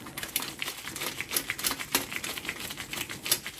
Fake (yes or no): no